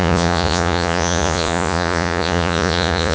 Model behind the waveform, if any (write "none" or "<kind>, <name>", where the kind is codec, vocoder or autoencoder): vocoder, Vocos